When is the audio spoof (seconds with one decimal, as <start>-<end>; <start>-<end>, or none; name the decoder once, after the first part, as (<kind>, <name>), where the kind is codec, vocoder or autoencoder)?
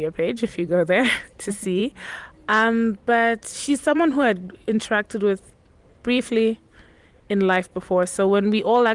0.0-1.8 (vocoder, BigVGAN v2); 3.4-8.9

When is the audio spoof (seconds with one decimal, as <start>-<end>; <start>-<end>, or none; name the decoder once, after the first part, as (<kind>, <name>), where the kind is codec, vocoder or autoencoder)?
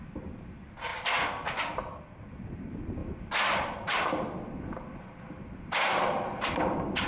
3.0-7.1 (vocoder, BigVGAN v2)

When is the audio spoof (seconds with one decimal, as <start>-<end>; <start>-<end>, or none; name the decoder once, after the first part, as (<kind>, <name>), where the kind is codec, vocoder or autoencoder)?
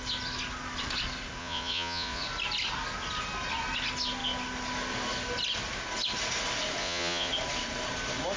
1.4-2.2 (vocoder, Vocos); 6.8-7.3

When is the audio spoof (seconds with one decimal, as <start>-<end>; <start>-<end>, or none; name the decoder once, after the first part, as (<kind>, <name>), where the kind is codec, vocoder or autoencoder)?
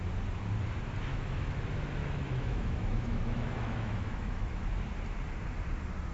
1.1-1.6 (autoencoder, DAC-VAE); 2.0-4.6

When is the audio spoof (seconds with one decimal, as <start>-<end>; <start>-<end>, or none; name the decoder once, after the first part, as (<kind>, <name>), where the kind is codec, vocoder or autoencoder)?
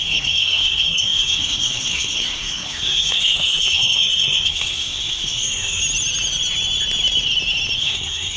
0.0-5.8 (codec, SNAC); 7.8-8.4